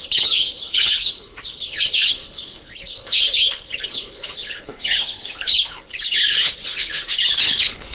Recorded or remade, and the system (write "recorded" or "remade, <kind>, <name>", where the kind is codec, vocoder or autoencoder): remade, codec, HILCodec